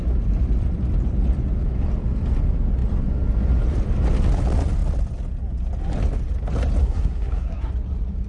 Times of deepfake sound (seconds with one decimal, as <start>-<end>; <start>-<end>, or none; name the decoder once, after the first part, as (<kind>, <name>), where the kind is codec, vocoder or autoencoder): 6.8-7.7 (codec, SNAC)